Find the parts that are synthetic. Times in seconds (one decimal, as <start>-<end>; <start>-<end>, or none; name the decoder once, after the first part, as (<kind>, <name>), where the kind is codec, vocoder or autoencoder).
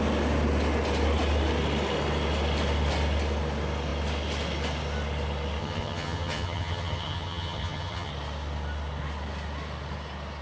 5.6-8.1 (vocoder, HiFi-GAN)